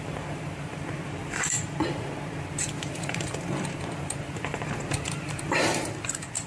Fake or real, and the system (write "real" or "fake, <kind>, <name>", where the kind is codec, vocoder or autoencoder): fake, vocoder, BigVGAN v2